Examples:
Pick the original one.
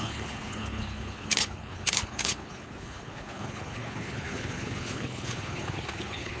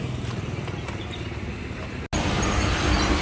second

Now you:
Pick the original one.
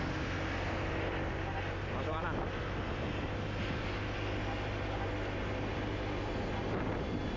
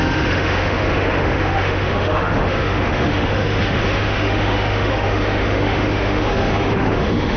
first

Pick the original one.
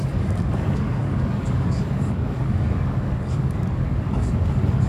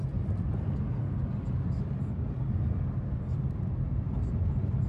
second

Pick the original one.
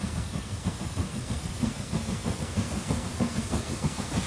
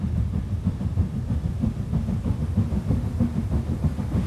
second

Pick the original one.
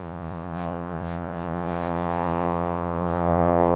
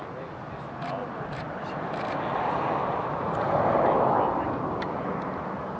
second